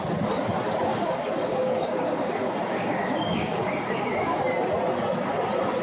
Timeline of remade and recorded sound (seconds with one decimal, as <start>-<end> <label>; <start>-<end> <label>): 0.0-0.9 recorded; 0.9-4.4 remade; 4.4-5.8 recorded